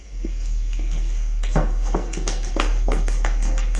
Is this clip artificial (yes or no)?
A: yes